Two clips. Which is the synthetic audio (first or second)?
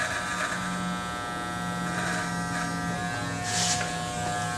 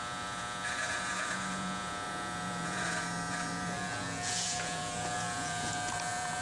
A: second